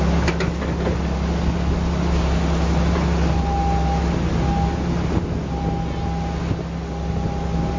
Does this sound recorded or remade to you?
recorded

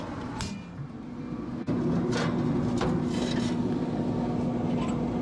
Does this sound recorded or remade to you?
recorded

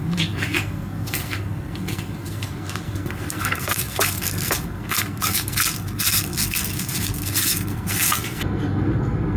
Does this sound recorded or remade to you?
remade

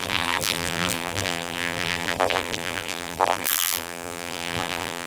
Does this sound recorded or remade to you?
remade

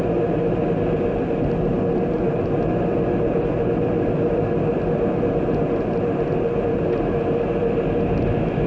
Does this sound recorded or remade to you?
recorded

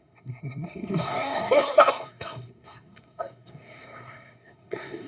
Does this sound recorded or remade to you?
remade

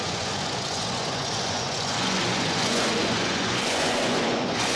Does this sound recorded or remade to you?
remade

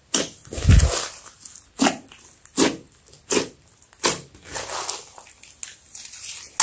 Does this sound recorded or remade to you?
recorded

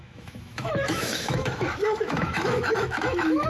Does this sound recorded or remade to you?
remade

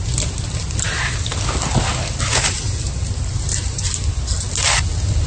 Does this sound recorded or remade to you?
recorded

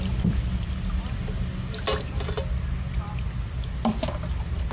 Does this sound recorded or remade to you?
recorded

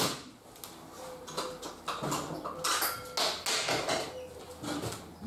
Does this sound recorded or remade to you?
recorded